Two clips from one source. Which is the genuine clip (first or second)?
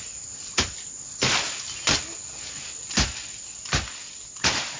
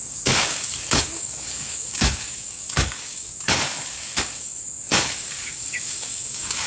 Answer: first